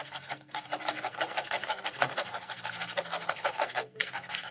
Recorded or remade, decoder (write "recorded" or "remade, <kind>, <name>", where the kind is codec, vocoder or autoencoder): remade, codec, SNAC